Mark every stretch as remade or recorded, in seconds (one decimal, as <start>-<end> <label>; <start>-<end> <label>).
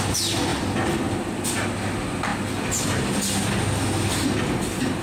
0.0-5.0 recorded